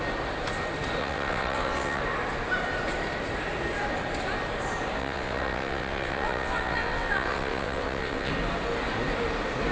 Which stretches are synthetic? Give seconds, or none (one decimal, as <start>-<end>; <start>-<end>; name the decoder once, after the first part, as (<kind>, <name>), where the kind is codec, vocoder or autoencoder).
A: 1.0-2.0 (vocoder, WaveNeXt); 5.0-8.3